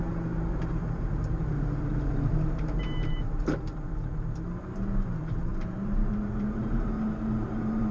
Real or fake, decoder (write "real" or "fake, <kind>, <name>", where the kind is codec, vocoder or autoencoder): fake, vocoder, BigVGAN v2